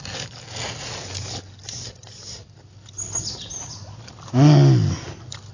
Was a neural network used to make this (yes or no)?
no